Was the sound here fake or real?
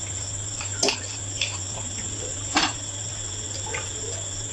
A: fake